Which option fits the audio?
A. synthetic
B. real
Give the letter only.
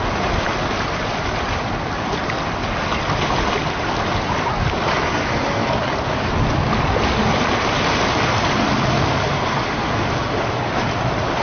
B